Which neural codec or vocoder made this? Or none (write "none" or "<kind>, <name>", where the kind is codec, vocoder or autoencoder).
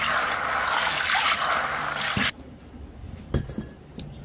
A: none